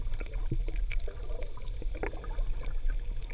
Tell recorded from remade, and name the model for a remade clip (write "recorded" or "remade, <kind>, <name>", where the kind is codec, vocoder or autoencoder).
recorded